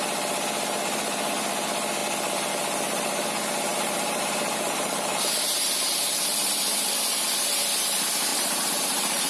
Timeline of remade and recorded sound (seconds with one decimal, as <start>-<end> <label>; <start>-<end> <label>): 0.0-3.7 recorded; 3.7-6.5 remade; 6.5-8.3 recorded; 8.3-9.3 remade